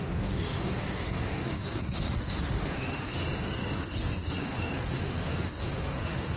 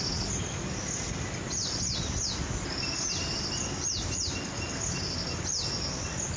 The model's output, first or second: first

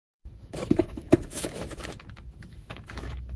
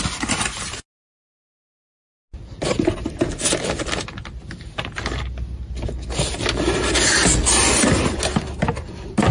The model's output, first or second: first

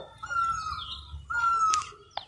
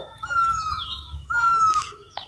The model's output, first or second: second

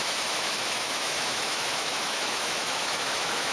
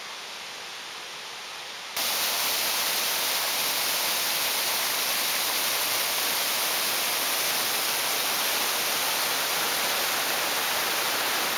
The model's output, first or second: first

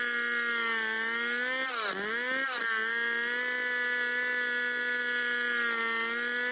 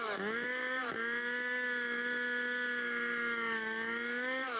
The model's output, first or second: second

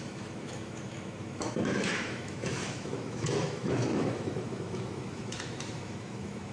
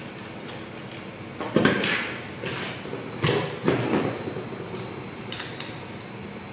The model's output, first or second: first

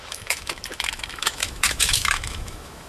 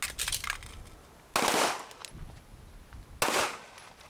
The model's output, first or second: first